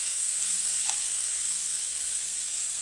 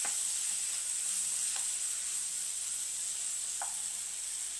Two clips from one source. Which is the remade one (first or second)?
first